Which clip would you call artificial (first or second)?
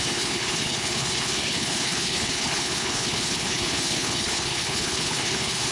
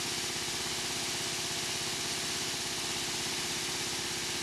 first